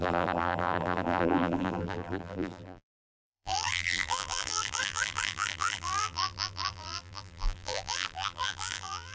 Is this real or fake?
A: fake